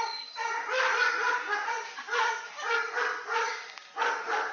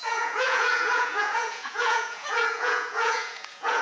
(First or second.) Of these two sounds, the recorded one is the first